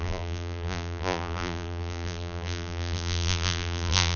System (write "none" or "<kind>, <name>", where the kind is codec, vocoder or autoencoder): vocoder, BigVGAN v2